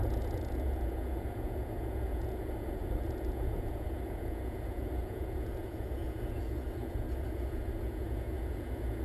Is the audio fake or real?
fake